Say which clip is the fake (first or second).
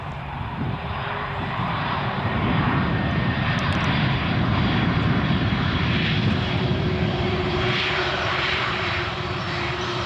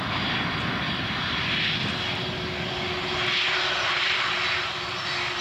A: first